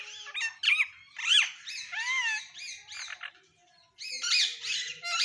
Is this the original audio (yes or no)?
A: yes